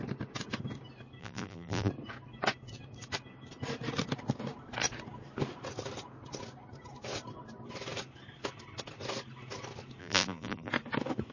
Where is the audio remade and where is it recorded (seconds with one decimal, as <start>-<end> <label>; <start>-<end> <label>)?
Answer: 0.0-1.2 recorded; 1.2-1.9 remade; 1.9-10.0 recorded; 10.0-10.7 remade; 10.7-11.3 recorded